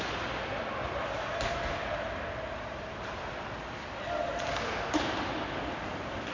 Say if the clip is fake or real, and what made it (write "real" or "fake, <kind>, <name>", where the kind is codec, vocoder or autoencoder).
real